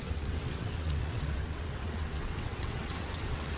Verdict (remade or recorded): remade